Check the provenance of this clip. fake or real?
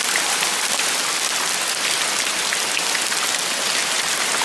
real